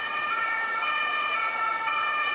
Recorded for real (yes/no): no